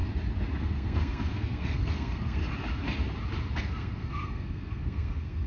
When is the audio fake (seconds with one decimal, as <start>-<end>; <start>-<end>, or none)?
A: 0.6-2.4; 3.6-5.5